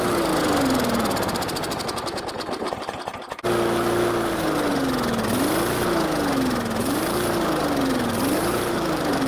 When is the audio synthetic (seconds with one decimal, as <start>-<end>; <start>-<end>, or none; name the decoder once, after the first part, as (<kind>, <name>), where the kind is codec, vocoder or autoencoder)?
0.0-3.1 (vocoder, BigVGAN v2); 6.8-9.3